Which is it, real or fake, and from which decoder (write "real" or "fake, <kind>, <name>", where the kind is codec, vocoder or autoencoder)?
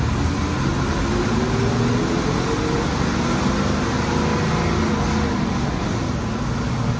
real